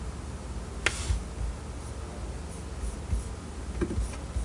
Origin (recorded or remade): recorded